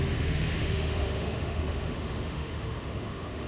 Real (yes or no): no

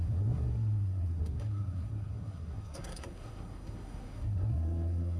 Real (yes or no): no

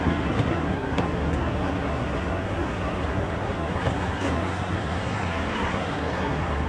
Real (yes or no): no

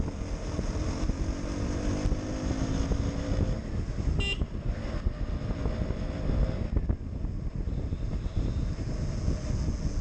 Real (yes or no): yes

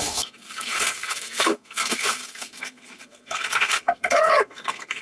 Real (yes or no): no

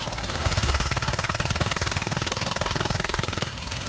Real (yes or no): no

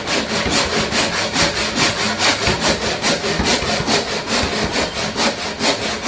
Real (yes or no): yes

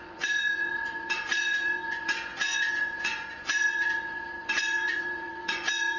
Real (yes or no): no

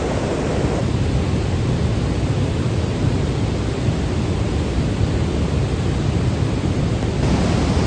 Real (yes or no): yes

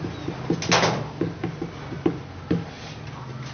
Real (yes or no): yes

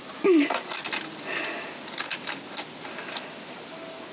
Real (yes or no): yes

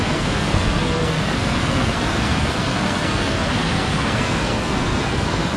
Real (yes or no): no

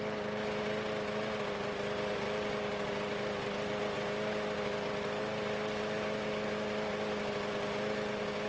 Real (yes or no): yes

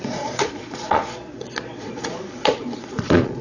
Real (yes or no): no